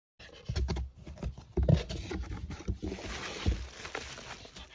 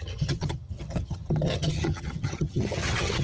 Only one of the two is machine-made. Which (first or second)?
second